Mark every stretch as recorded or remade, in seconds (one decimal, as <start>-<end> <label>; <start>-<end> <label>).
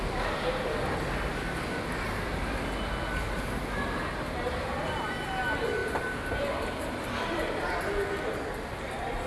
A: 0.0-5.8 recorded; 5.8-8.2 remade; 8.2-9.3 recorded